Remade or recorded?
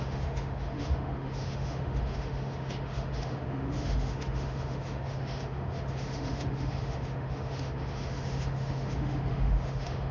remade